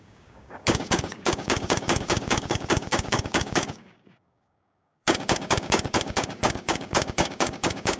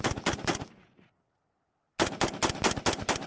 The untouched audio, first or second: second